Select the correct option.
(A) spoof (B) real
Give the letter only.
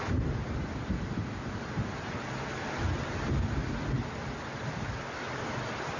B